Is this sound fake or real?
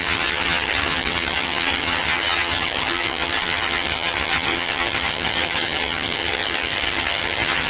fake